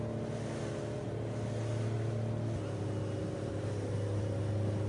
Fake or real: real